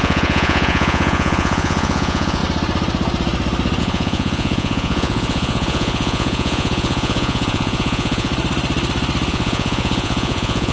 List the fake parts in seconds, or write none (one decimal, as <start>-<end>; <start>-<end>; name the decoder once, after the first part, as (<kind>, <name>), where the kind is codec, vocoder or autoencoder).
0.0-2.4 (vocoder, Vocos); 3.8-8.3; 9.3-10.7